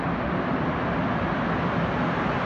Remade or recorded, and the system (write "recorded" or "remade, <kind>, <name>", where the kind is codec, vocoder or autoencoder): recorded